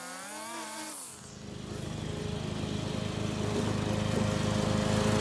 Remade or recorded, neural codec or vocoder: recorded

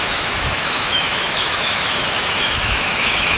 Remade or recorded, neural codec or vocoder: remade, autoencoder, DAC-VAE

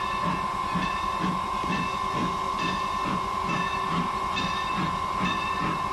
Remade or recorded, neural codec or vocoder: recorded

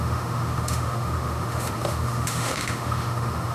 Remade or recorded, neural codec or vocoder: remade, autoencoder, DAC-VAE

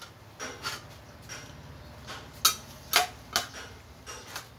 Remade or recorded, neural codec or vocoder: recorded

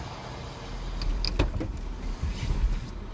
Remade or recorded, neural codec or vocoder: recorded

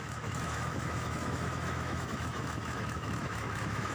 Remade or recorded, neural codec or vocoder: remade, autoencoder, DAC-VAE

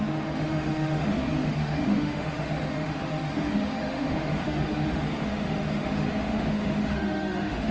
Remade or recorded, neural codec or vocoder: remade, autoencoder, DAC-VAE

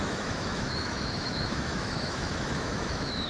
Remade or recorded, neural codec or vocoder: remade, autoencoder, DAC-VAE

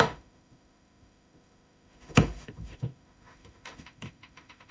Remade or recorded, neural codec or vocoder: remade, autoencoder, DAC-VAE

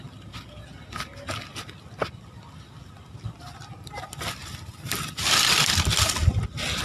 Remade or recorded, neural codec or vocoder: recorded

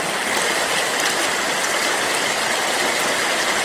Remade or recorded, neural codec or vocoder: recorded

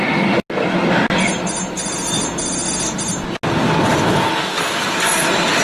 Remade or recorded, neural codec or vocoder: recorded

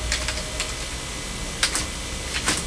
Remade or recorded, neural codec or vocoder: recorded